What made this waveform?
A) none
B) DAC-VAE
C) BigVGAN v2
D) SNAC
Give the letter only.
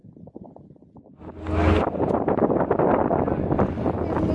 A